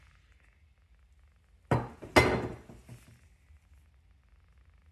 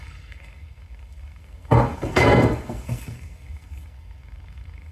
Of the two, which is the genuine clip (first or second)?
first